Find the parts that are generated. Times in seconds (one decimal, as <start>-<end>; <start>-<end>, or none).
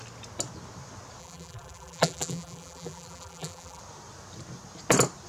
1.2-3.8